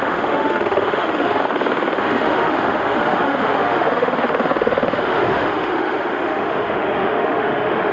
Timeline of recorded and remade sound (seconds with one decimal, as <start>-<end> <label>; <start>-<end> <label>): 0.0-1.4 remade; 1.4-2.0 recorded; 2.0-7.9 remade